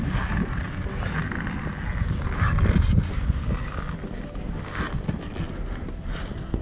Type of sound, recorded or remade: recorded